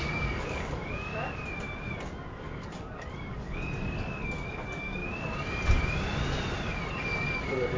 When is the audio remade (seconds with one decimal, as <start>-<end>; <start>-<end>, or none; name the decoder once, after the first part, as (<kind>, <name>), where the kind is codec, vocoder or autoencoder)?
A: 0.0-1.1 (codec, DAC); 2.3-5.0; 6.9-7.8